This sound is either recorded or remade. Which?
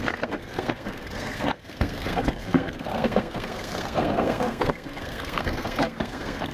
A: remade